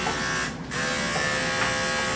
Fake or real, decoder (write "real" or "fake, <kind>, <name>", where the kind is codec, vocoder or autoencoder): real